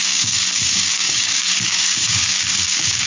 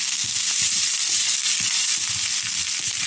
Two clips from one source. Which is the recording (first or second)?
second